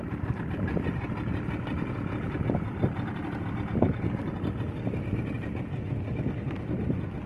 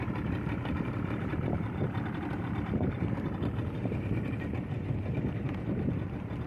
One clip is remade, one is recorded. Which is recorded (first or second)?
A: first